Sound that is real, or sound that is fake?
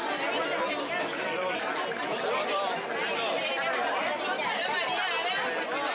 real